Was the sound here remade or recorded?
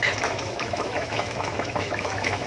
remade